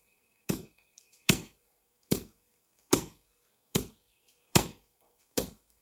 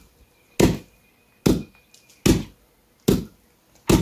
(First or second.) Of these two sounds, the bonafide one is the second